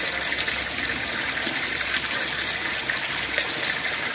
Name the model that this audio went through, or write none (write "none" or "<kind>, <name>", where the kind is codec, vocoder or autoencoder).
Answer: none